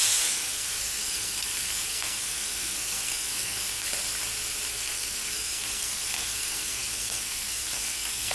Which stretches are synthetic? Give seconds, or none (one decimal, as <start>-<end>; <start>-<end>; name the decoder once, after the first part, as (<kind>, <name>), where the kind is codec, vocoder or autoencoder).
0.0-3.9 (codec, SNAC); 4.7-8.3